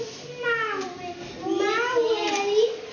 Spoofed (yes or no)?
no